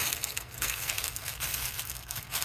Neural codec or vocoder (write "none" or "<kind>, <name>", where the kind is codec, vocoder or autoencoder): codec, SNAC